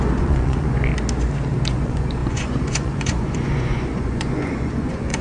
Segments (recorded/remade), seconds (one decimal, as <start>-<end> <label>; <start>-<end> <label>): 0.0-0.9 remade; 0.9-1.7 recorded; 1.7-5.2 remade